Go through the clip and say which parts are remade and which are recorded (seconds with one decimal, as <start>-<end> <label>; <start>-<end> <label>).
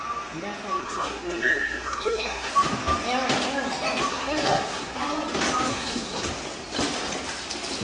0.0-0.8 recorded; 0.8-2.5 remade; 2.5-4.1 recorded; 4.1-5.0 remade; 5.0-5.7 recorded; 5.7-6.3 remade; 6.3-7.8 recorded